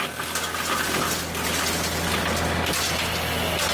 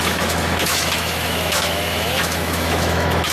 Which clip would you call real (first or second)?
first